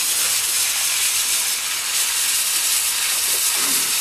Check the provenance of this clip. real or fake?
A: real